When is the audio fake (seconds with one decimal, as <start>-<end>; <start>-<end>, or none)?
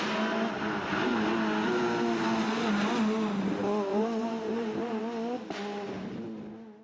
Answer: 3.9-5.0